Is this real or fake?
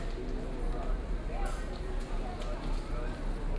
real